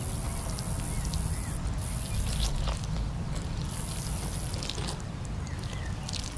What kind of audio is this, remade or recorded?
recorded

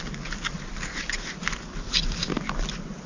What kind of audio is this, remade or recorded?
recorded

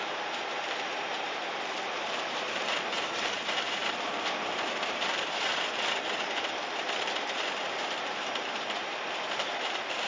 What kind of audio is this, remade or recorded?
remade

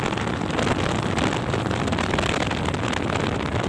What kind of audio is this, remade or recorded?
recorded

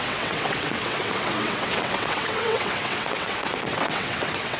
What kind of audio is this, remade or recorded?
remade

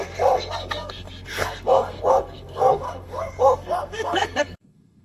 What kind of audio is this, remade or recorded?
remade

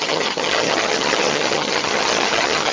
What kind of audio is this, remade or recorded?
remade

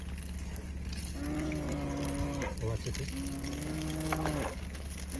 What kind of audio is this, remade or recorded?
recorded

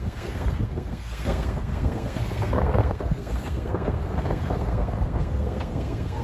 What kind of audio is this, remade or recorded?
remade